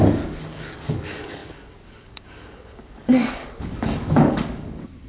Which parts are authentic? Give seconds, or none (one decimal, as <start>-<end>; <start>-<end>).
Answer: none